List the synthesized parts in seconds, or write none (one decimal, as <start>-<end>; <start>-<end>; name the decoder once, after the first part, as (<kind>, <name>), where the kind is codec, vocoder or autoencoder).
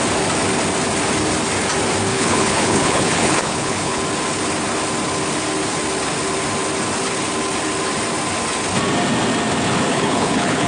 2.1-4.0 (codec, HILCodec); 9.9-10.7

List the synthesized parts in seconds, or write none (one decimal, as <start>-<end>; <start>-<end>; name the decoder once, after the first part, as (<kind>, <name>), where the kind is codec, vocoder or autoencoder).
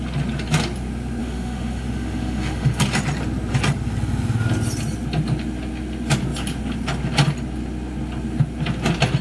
1.2-2.8 (autoencoder, DAC-VAE)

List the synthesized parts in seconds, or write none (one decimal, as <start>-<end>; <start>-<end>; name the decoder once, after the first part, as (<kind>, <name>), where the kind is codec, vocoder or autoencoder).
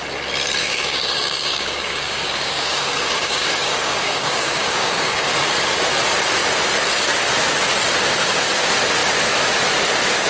0.6-5.3 (codec, DAC)